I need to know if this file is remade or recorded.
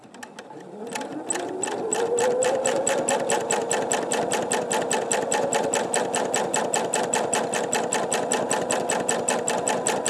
recorded